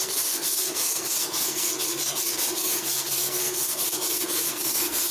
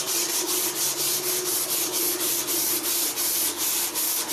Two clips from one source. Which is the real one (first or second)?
second